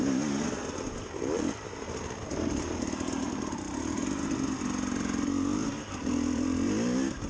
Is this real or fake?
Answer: real